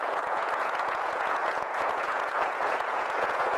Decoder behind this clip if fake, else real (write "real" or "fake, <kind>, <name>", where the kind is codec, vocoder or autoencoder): fake, vocoder, Vocos